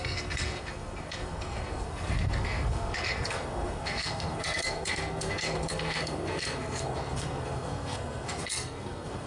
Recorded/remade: remade